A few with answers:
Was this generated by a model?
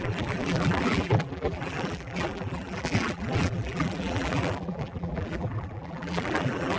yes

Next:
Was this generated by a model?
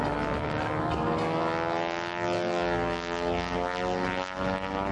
no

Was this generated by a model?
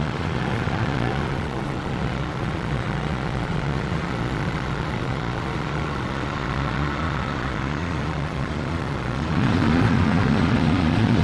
yes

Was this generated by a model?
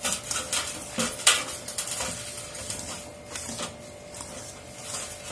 no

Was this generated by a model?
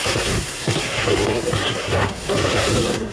yes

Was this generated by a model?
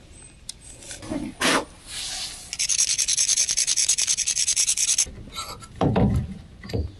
no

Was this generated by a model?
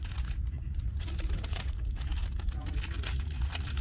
yes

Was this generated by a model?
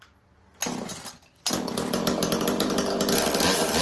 no